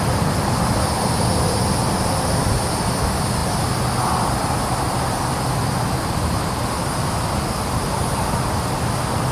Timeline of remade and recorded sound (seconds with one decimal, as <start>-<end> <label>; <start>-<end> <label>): 0.0-9.3 recorded